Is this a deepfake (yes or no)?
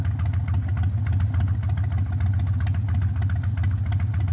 no